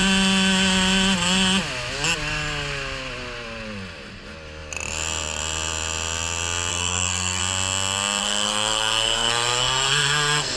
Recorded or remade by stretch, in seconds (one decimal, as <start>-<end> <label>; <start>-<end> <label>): 0.0-6.7 recorded; 6.7-7.4 remade; 7.4-8.2 recorded; 8.2-10.6 remade